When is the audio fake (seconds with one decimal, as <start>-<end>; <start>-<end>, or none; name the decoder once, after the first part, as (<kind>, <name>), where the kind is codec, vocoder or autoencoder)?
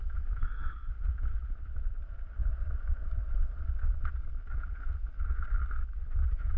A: 0.4-0.9 (codec, SNAC)